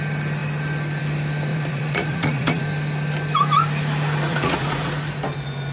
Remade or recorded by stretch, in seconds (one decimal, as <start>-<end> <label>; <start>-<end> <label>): 0.0-1.5 recorded; 1.5-2.6 remade; 2.6-4.3 recorded; 4.3-4.9 remade; 4.9-5.7 recorded